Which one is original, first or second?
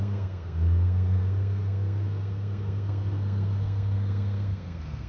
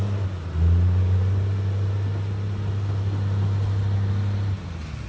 second